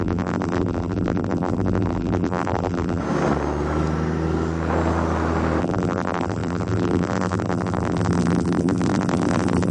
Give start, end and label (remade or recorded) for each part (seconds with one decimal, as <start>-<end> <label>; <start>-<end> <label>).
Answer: 0.0-3.0 remade; 3.0-5.6 recorded; 5.6-9.7 remade